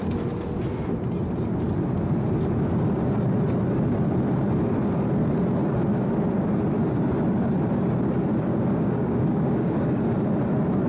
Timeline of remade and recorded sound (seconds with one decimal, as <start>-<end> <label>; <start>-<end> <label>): 0.0-8.5 recorded; 8.5-10.0 remade; 10.0-10.9 recorded